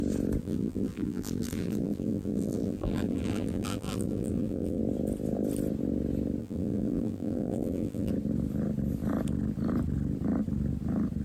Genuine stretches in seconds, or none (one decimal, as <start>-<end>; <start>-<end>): 0.0-0.4; 4.8-6.4; 8.1-11.2